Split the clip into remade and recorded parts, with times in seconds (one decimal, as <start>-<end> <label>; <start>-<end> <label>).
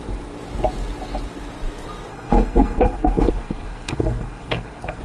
0.0-2.1 recorded; 2.1-5.0 remade